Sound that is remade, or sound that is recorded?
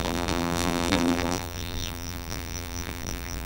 remade